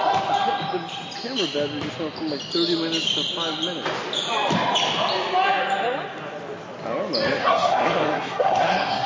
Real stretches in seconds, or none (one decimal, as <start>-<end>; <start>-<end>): 0.0-7.4